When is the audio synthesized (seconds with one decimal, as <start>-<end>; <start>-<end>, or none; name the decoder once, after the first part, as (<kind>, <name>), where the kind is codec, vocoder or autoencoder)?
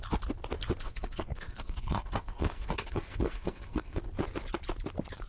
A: 0.8-4.0 (codec, SNAC)